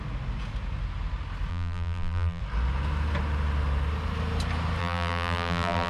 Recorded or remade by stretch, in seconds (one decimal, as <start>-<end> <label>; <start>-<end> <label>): 0.0-1.5 recorded; 1.5-2.4 remade; 2.4-4.8 recorded; 4.8-5.9 remade